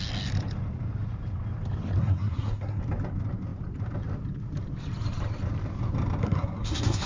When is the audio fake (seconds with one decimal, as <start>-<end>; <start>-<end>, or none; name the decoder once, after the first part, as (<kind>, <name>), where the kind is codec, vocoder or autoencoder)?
2.0-2.8 (codec, SNAC); 6.2-7.1